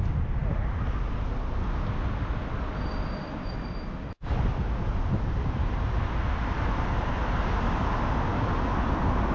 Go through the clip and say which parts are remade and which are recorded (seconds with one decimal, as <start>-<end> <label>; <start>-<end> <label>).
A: 0.0-9.3 recorded